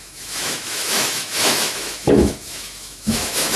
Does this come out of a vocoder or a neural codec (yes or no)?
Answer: yes